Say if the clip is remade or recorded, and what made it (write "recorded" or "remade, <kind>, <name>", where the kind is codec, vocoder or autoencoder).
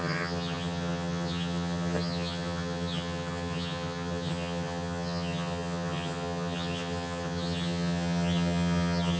remade, vocoder, HiFi-GAN